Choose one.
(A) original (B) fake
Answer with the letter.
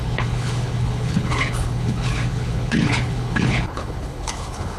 B